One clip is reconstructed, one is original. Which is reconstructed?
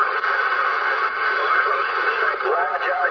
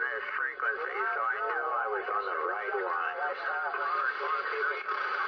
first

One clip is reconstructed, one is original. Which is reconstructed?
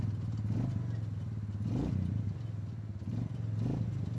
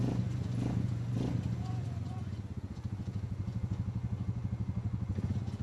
second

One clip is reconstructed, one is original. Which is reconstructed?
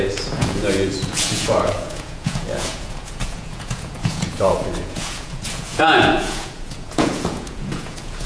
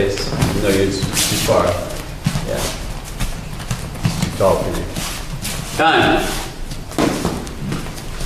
first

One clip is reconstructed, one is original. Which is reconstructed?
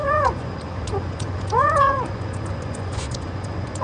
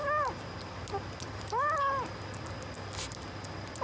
first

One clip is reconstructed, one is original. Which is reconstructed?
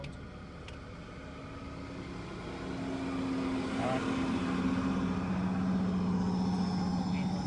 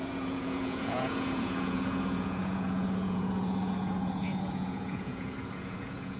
second